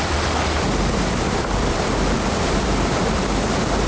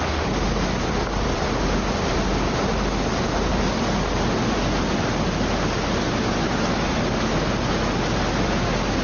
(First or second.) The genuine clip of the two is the second